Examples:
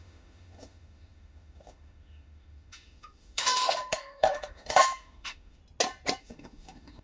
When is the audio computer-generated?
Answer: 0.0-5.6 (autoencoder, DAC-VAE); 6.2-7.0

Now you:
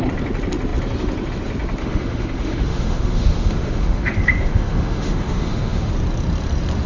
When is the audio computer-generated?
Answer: 1.8-5.9 (autoencoder, DAC-VAE)

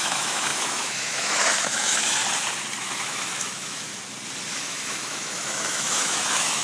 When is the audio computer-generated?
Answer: 0.0-2.2 (autoencoder, DAC-VAE); 2.8-3.9; 4.6-6.6

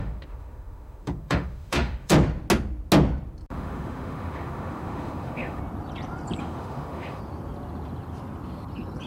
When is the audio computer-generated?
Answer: 0.0-2.1 (autoencoder, DAC-VAE); 3.5-5.6; 6.4-7.2

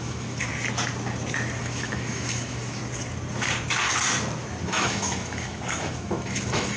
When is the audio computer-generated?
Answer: 0.0-0.5 (autoencoder, DAC-VAE); 1.6-2.8; 4.6-6.8

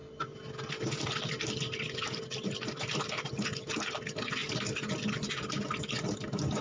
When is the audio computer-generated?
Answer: none

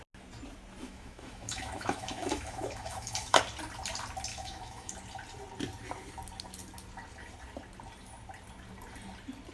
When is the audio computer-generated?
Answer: 0.8-3.4 (autoencoder, DAC-VAE); 4.3-4.9